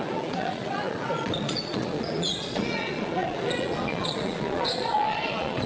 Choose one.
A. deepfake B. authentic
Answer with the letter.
A